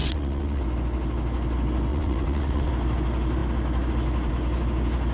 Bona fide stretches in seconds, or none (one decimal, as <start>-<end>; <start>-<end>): 0.6-1.9; 2.7-5.1